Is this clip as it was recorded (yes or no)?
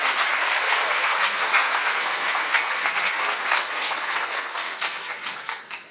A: no